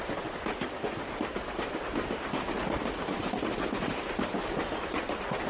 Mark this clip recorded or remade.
recorded